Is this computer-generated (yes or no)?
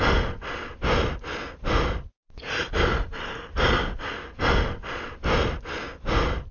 no